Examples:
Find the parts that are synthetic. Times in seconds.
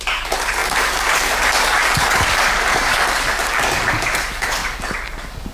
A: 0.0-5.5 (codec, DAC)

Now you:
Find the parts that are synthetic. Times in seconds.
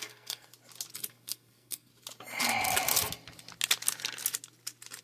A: 0.0-0.5 (codec, SNAC); 1.1-1.9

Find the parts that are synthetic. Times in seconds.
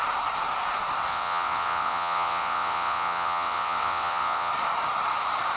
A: 1.1-4.5 (vocoder, WaveNeXt)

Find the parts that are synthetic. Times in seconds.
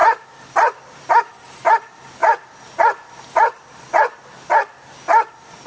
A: none